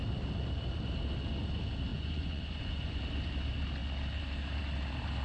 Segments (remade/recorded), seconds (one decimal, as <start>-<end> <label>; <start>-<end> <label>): 0.0-1.9 recorded; 1.9-3.0 remade; 3.0-5.2 recorded